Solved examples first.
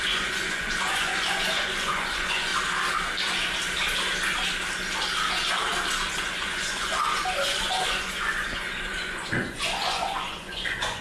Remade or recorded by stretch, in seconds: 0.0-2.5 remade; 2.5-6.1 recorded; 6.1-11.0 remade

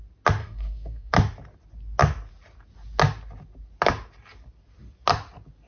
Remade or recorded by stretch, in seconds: 0.0-0.4 recorded; 0.4-1.1 remade; 1.1-5.7 recorded